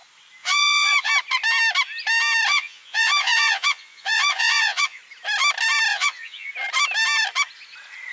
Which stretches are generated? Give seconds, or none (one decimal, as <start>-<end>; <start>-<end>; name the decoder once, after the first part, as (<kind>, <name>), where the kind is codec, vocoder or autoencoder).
0.4-1.1 (vocoder, Vocos); 2.5-5.0; 5.9-6.5